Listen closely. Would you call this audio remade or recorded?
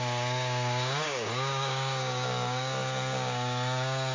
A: remade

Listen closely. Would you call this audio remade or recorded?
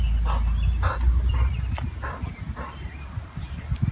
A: recorded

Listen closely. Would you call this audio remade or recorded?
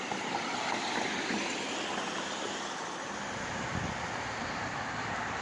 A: recorded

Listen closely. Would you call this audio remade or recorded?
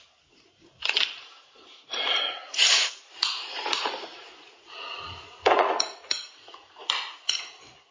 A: remade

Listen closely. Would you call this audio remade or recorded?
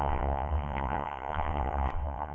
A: remade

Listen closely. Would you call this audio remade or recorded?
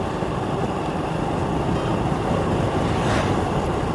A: recorded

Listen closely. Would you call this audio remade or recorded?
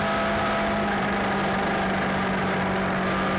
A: recorded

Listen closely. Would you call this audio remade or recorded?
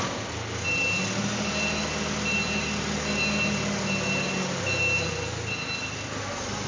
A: recorded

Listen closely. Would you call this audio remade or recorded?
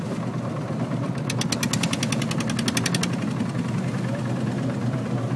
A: recorded